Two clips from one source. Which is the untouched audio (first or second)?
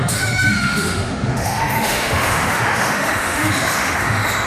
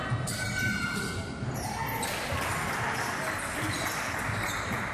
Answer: second